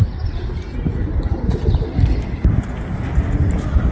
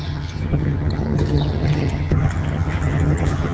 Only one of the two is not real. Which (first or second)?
second